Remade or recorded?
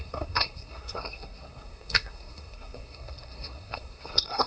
remade